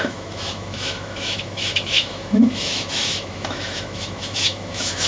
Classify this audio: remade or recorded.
remade